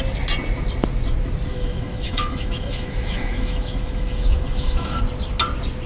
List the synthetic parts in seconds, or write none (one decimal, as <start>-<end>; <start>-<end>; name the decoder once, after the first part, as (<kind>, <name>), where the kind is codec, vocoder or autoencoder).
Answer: 1.5-5.0 (autoencoder, DAC-VAE)